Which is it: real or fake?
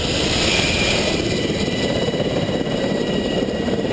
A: fake